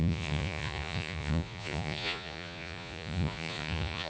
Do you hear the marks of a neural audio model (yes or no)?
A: yes